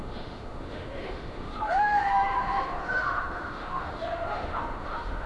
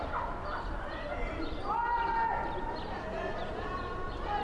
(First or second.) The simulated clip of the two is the first